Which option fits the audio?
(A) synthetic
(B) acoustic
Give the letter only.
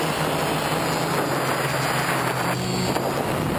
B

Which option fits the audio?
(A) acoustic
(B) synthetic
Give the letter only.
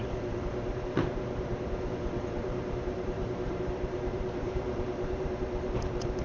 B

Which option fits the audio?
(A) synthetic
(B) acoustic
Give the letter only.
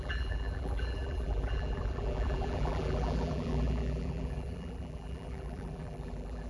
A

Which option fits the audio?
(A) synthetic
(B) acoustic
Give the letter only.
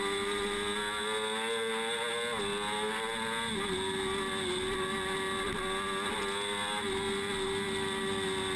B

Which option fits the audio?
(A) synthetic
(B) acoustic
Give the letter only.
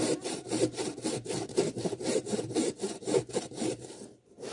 A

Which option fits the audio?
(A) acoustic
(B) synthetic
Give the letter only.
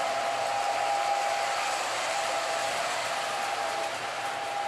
A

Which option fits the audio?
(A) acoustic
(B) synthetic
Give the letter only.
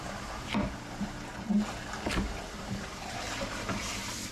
B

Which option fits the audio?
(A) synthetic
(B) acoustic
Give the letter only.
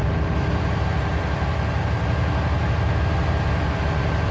B